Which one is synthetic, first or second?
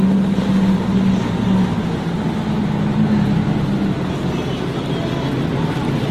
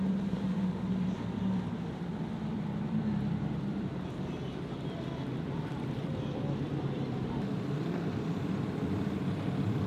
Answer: second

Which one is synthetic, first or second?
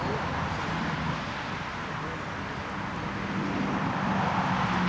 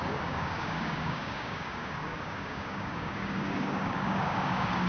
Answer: second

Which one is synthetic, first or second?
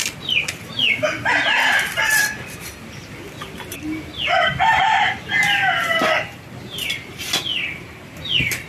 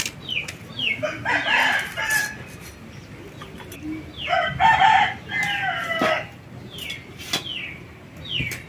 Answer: first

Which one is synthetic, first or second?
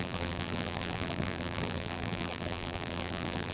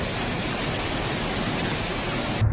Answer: first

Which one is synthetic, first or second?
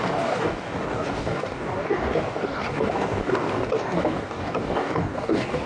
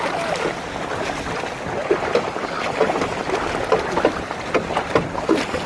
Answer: first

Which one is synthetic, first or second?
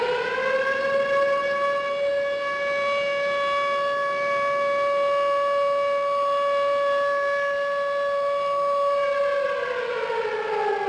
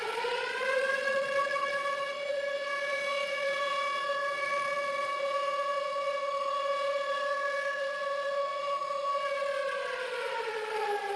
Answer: second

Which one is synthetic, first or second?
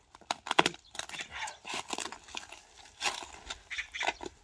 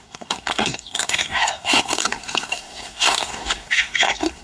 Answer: second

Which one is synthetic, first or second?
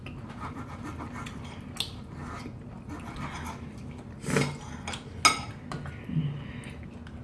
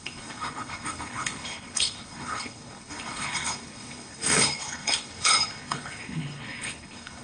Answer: second